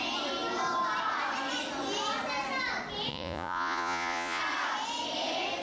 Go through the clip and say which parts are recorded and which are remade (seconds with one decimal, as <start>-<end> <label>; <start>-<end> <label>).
0.0-3.1 recorded; 3.1-4.4 remade; 4.4-5.6 recorded